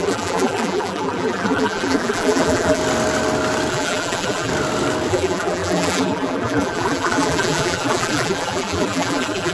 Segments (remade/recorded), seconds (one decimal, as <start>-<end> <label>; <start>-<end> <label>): 0.0-2.8 remade; 2.8-3.7 recorded; 3.7-4.5 remade; 4.5-5.1 recorded; 5.1-9.5 remade